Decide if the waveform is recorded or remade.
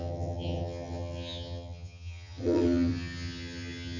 remade